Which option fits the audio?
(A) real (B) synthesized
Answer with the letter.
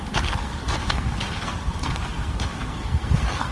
B